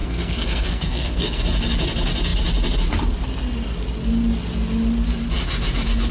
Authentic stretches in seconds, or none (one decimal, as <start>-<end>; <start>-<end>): 1.4-6.1